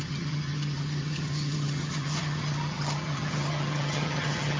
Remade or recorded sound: remade